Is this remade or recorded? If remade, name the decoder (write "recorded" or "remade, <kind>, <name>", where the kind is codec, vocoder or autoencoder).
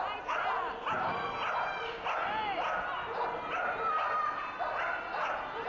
recorded